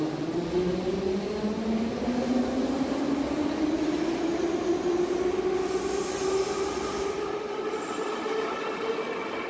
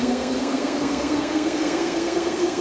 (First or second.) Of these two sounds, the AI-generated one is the second